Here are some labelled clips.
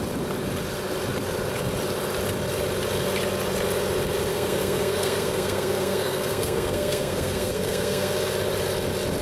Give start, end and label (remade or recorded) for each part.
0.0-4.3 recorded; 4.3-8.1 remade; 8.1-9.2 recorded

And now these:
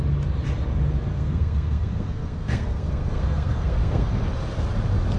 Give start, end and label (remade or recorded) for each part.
0.0-1.1 recorded; 1.1-4.2 remade; 4.2-5.2 recorded

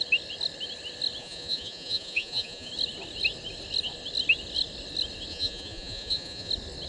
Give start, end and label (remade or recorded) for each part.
0.0-1.2 recorded; 1.2-2.7 remade; 2.7-5.3 recorded; 5.3-6.5 remade; 6.5-6.9 recorded

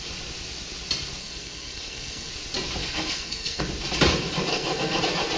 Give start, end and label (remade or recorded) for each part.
0.0-1.2 recorded; 1.2-2.3 remade; 2.3-2.8 recorded; 2.8-3.6 remade; 3.6-4.5 recorded; 4.5-5.0 remade; 5.0-5.4 recorded

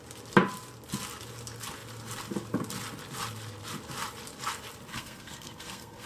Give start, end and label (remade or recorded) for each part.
0.0-4.9 recorded; 4.9-6.1 remade

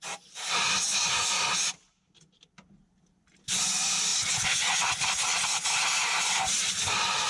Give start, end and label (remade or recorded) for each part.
0.0-7.3 recorded